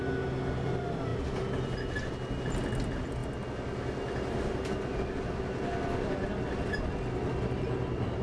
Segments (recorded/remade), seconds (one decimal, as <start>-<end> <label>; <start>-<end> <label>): 0.0-8.2 recorded